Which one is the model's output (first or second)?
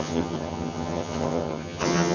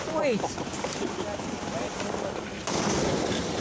first